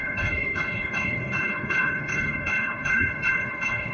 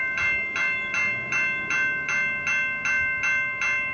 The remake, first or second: first